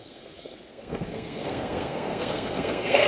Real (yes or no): no